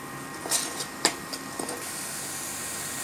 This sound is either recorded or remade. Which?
remade